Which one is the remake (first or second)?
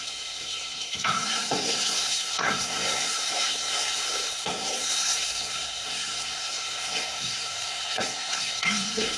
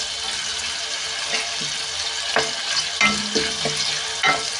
first